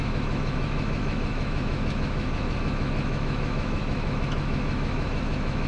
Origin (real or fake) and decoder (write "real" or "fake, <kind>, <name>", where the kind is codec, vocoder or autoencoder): fake, autoencoder, DAC-VAE